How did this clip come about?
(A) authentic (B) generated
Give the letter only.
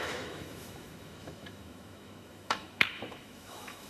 B